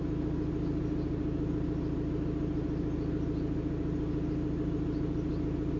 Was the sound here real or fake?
real